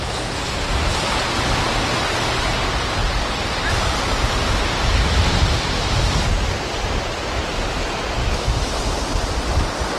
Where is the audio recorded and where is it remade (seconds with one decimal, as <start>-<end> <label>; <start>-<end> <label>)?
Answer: 0.0-8.2 recorded; 8.2-8.8 remade; 8.8-10.0 recorded